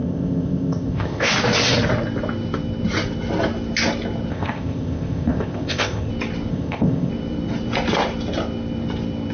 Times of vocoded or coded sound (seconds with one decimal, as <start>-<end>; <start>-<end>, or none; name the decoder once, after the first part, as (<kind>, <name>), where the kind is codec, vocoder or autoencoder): 0.0-1.3 (codec, ZipCodec); 4.3-6.1; 6.5-7.1